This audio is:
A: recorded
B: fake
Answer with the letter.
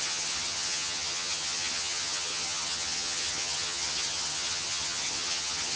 B